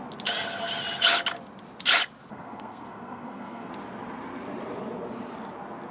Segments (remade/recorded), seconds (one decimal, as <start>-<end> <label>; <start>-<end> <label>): 0.0-2.3 recorded; 2.3-3.7 remade; 3.7-5.9 recorded